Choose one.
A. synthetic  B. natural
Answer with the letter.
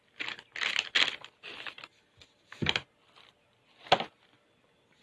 B